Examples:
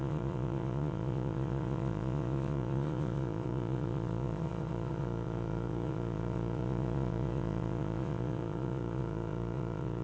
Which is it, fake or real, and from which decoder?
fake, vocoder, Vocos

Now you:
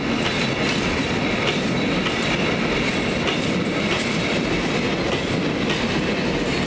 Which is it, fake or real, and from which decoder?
real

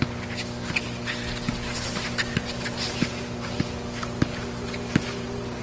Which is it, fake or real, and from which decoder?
real